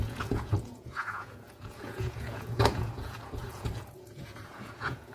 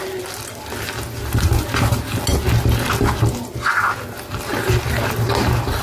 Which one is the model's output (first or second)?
first